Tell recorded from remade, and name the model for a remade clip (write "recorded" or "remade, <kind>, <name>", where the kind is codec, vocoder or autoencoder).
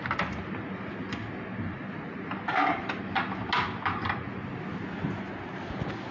recorded